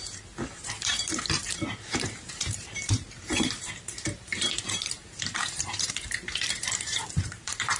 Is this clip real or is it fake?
fake